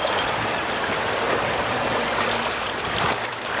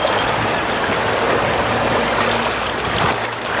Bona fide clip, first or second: second